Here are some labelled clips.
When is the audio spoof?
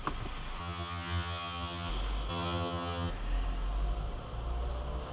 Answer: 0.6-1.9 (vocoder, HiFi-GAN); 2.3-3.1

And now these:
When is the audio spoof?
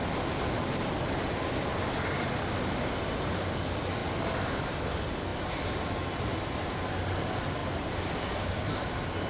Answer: 4.0-4.7 (vocoder, BigVGAN v2); 7.6-8.1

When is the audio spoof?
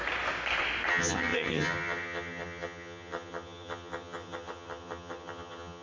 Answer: 0.9-5.8 (vocoder, HiFi-GAN)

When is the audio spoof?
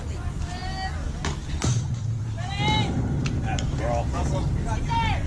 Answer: none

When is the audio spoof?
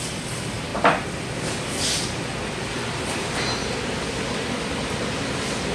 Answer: none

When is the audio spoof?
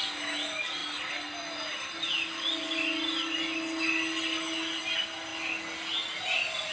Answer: none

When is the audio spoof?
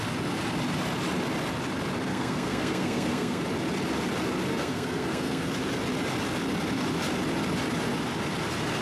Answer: 2.1-3.4 (codec, SNAC); 4.5-5.5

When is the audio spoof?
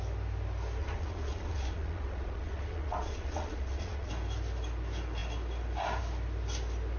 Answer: 0.8-4.1 (vocoder, Vocos)